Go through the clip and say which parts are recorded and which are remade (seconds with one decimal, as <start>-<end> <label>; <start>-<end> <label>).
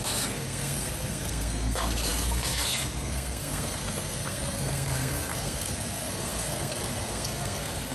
0.0-7.9 remade